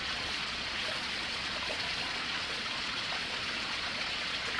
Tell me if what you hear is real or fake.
fake